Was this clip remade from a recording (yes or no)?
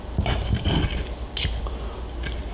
no